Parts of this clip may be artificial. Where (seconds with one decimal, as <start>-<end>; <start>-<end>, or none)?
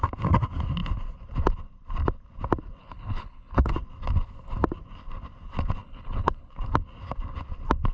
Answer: 2.8-3.7; 5.8-6.5